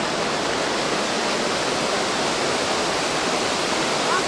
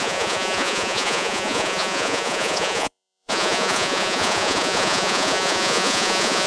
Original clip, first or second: first